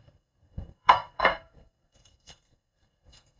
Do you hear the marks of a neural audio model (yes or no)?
yes